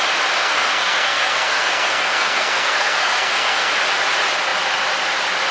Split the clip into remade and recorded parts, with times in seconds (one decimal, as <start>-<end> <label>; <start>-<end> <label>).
0.0-0.4 recorded; 0.4-3.7 remade; 3.7-5.5 recorded